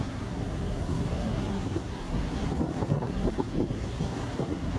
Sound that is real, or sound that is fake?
fake